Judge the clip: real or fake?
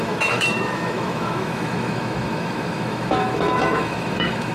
fake